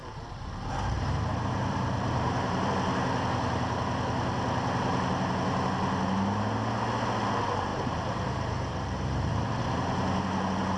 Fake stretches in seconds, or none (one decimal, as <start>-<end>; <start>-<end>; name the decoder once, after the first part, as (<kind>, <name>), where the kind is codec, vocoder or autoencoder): 0.0-2.7 (vocoder, BigVGAN v2); 7.7-9.4

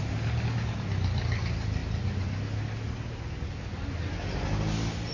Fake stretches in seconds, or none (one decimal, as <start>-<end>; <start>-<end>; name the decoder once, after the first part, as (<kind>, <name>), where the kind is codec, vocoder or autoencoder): none

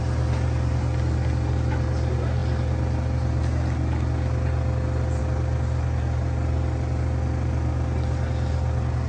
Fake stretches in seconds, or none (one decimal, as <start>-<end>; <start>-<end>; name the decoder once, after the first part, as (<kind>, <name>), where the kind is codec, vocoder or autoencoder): none

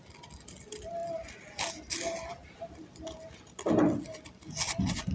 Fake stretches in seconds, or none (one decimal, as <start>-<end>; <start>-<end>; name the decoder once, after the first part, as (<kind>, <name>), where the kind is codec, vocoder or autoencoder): 2.4-3.4 (vocoder, BigVGAN v2)

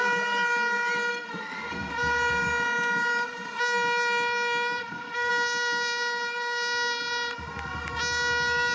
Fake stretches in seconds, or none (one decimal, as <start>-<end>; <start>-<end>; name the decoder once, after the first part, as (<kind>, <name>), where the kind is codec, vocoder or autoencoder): 1.1-1.9 (codec, SNAC); 4.8-5.3

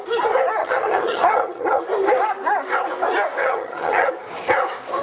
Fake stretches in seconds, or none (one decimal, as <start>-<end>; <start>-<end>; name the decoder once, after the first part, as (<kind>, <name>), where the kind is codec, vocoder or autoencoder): 0.6-1.8 (vocoder, HiFi-GAN); 3.4-4.1